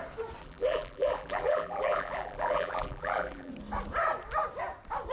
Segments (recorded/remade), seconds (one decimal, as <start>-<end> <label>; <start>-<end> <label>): 0.0-0.4 recorded; 0.4-3.5 remade; 3.5-5.1 recorded